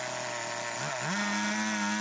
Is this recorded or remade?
recorded